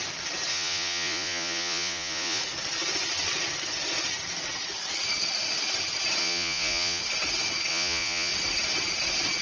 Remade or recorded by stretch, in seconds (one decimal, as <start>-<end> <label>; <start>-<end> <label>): 0.0-0.5 recorded; 0.5-2.4 remade; 2.4-6.2 recorded; 6.2-7.0 remade; 7.0-7.7 recorded; 7.7-8.3 remade; 8.3-9.4 recorded